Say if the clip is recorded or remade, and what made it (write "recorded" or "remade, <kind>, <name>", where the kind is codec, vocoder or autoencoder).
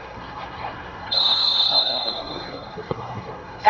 remade, codec, SNAC